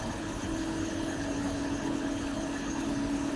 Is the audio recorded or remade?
remade